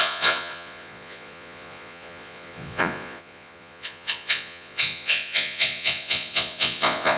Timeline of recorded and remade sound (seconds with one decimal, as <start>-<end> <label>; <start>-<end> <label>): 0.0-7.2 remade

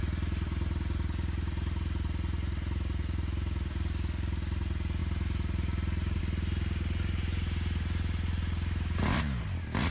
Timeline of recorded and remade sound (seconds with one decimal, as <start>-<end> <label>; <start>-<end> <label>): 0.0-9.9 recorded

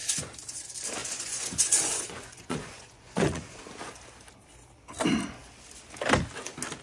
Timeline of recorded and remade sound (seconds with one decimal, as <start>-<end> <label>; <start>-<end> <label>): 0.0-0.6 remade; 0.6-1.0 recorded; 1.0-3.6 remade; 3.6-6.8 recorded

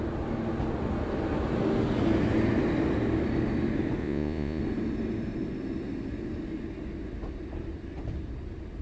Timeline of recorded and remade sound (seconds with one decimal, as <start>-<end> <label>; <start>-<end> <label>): 0.0-4.0 recorded; 4.0-4.6 remade; 4.6-8.8 recorded

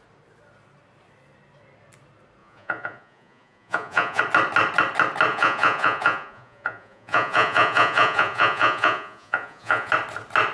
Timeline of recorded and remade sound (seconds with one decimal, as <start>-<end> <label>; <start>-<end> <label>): 0.0-2.4 recorded; 2.4-4.2 remade; 4.2-5.3 recorded; 5.3-9.9 remade; 9.9-10.5 recorded

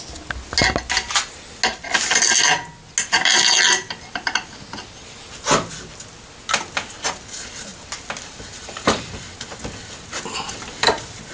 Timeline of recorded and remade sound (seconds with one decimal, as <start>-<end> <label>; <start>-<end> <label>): 0.0-11.3 recorded

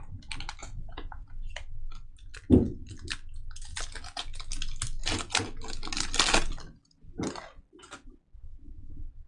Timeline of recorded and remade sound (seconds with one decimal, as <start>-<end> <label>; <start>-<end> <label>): 0.0-0.6 recorded; 0.6-1.5 remade; 1.5-9.3 recorded

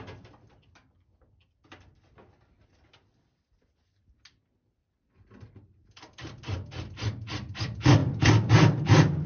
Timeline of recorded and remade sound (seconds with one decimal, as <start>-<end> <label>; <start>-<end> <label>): 0.0-9.3 recorded